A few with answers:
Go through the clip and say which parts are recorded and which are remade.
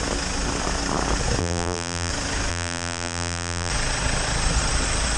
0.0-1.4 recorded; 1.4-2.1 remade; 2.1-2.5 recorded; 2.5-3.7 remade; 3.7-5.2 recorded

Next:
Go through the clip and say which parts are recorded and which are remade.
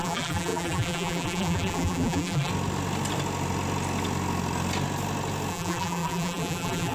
0.0-2.5 remade; 2.5-5.5 recorded; 5.5-6.9 remade